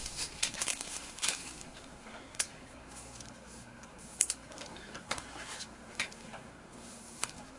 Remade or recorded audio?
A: remade